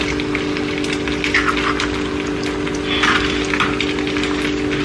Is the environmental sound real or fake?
real